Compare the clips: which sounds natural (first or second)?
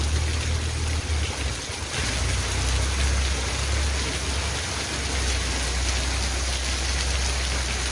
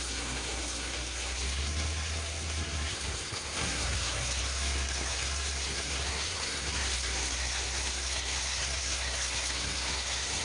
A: first